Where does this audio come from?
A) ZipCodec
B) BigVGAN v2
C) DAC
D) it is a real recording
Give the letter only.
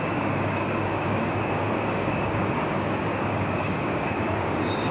C